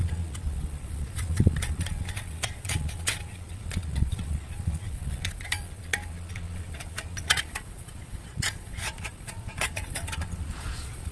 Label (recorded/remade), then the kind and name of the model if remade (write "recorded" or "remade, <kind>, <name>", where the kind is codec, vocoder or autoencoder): remade, vocoder, Vocos